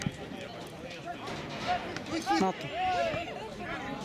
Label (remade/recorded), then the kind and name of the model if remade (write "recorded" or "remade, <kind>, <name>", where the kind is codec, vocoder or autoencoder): recorded